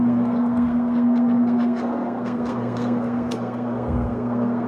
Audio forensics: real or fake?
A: fake